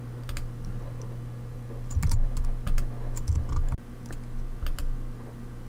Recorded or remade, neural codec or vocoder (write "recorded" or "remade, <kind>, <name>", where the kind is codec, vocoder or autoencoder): recorded